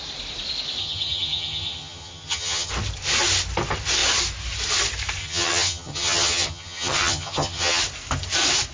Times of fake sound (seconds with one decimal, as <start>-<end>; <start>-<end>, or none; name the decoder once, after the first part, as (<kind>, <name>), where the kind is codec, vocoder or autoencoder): 0.8-2.7 (vocoder, HiFi-GAN); 5.2-7.8